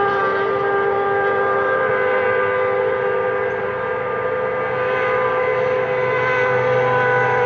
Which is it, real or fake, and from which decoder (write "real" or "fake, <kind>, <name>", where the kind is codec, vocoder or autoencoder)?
real